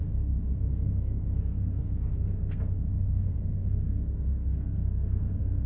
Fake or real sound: fake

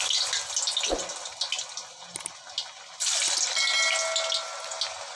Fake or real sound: real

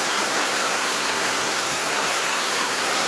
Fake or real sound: fake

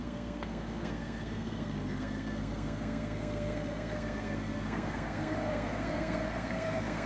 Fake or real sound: fake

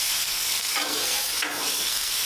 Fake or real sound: fake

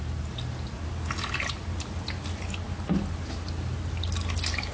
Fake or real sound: real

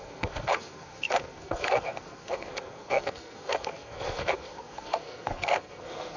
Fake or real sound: fake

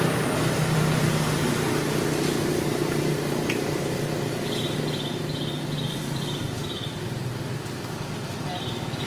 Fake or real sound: real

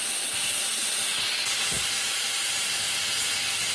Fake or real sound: real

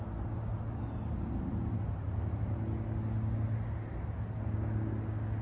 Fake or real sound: real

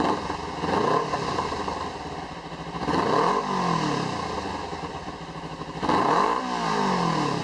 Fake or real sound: real